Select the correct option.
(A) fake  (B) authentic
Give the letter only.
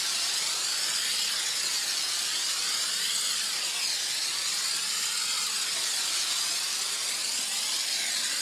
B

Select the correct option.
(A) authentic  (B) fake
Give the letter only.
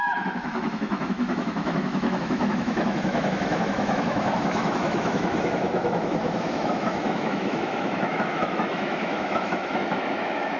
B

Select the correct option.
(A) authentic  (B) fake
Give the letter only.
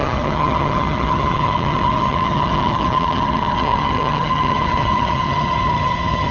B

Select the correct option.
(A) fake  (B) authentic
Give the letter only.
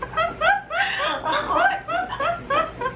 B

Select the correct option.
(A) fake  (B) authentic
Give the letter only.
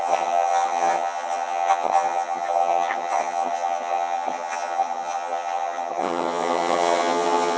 A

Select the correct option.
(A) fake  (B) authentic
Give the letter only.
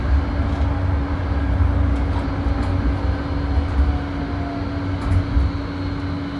B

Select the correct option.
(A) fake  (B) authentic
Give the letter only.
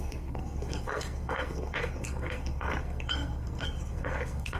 A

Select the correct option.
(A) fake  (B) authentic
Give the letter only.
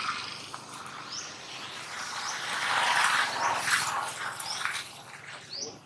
B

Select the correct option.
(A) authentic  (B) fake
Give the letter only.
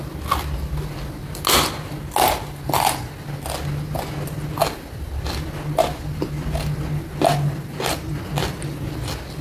A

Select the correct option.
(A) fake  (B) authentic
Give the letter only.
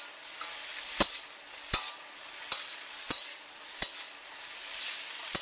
B